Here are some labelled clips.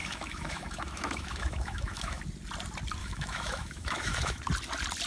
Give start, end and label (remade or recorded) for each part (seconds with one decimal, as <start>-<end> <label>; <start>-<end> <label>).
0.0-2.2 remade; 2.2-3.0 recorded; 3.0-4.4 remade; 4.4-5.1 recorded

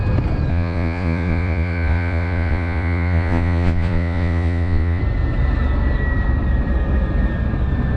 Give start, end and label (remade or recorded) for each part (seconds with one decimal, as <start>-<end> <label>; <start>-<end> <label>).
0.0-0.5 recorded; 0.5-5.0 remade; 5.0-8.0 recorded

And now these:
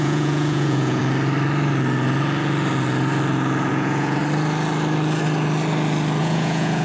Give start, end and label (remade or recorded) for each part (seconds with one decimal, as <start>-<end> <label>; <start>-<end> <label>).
0.0-1.0 remade; 1.0-3.7 recorded; 3.7-4.2 remade; 4.2-6.2 recorded; 6.2-6.8 remade